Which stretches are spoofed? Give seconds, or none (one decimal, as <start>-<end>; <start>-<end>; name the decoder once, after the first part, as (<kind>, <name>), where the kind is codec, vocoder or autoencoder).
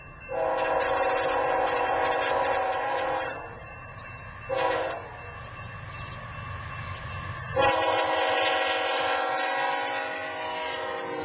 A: 3.6-4.1 (vocoder, BigVGAN v2)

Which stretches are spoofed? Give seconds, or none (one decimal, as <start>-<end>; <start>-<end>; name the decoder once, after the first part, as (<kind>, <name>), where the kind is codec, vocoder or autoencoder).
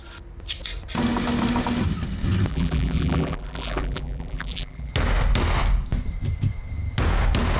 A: 2.5-4.9 (vocoder, BigVGAN v2)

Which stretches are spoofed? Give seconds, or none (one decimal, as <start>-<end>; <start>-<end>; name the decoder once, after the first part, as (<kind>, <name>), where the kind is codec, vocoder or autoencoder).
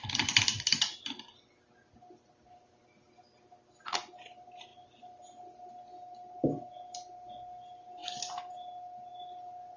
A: none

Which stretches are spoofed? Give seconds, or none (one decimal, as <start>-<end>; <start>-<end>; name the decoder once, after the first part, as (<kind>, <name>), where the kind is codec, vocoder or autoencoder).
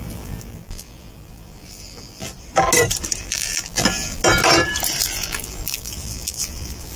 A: 0.0-2.3 (vocoder, BigVGAN v2); 3.2-4.2; 5.0-7.0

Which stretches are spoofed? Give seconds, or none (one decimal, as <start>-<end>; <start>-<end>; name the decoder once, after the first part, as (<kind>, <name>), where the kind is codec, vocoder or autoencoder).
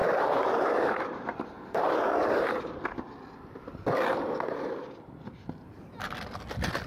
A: 0.0-1.8 (vocoder, BigVGAN v2)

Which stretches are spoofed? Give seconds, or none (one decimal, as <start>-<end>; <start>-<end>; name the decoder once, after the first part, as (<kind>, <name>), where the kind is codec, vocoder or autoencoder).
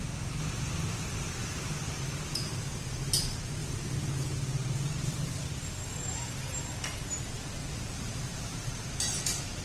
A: 1.4-2.8 (vocoder, BigVGAN v2); 3.6-5.4; 7.6-8.7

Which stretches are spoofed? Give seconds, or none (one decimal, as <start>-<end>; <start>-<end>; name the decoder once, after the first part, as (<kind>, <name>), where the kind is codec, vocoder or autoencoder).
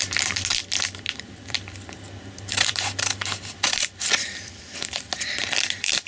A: 0.0-6.1 (vocoder, BigVGAN v2)